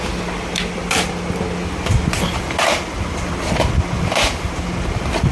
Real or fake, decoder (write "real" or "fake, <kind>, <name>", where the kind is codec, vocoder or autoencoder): real